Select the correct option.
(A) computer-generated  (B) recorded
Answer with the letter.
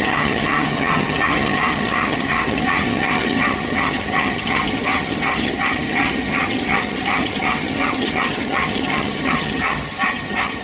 A